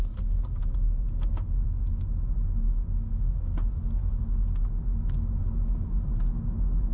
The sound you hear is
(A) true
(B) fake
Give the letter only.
A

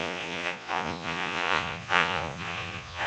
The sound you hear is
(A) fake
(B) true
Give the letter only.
A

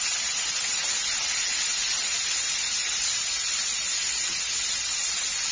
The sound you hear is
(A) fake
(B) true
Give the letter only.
B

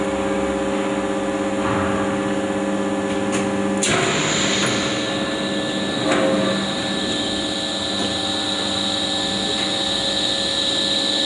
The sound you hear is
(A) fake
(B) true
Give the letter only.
B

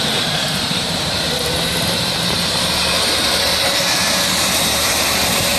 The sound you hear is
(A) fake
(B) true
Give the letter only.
A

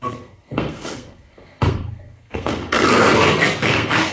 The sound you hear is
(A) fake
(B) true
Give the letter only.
A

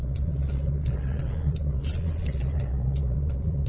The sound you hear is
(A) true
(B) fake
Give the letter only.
B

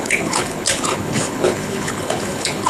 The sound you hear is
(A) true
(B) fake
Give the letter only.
B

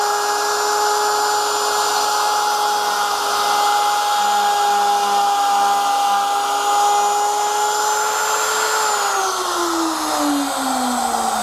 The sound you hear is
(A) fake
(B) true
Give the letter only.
B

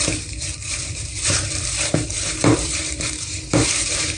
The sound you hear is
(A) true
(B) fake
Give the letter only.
B